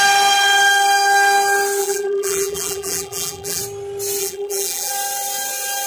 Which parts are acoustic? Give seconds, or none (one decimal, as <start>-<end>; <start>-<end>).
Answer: 0.0-1.8; 3.6-4.2; 4.9-5.9